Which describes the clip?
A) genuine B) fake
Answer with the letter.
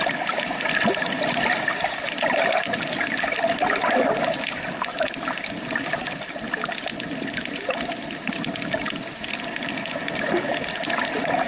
A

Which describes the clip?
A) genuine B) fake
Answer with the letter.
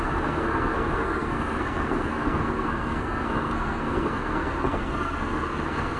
B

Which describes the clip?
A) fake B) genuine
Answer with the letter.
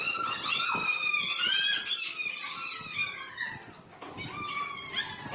B